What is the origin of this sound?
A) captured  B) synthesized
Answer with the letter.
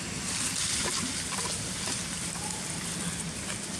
A